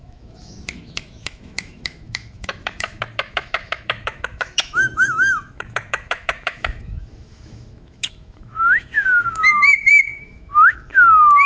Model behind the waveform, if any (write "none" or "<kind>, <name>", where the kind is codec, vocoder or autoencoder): autoencoder, DAC-VAE